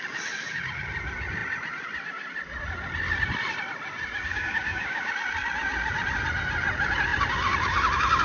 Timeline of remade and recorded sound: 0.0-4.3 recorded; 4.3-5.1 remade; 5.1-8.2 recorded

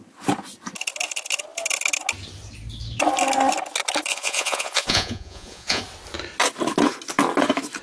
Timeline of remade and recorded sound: 0.0-4.1 recorded; 4.1-5.8 remade; 5.8-7.8 recorded

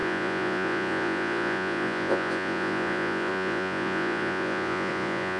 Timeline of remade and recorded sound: 0.0-5.4 remade